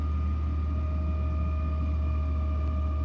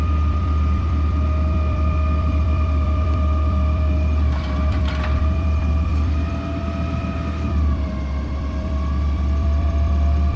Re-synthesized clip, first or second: second